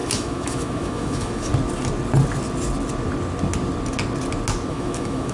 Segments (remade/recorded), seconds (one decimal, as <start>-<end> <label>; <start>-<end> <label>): 0.0-1.5 remade; 1.5-4.7 recorded; 4.7-5.3 remade